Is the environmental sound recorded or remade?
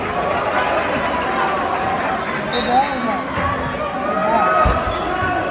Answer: recorded